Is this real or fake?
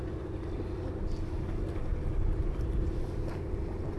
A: real